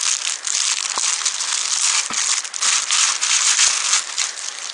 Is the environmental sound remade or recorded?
recorded